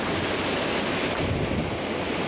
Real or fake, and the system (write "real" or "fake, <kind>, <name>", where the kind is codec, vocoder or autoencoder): real